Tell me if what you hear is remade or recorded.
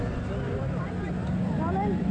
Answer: remade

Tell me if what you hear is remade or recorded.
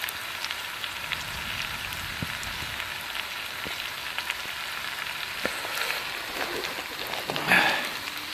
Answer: recorded